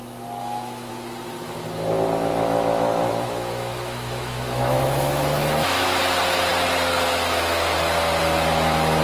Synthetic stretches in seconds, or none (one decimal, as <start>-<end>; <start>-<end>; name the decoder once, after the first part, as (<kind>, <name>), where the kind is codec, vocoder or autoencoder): 0.4-0.9 (autoencoder, DAC-VAE); 2.3-6.0